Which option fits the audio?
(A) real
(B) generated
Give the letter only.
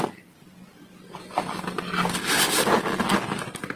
A